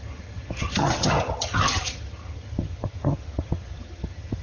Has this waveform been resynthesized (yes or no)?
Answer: yes